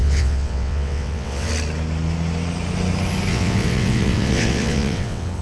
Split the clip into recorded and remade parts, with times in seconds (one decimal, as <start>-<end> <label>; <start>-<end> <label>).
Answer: 0.0-1.5 remade; 1.5-3.3 recorded; 3.3-5.4 remade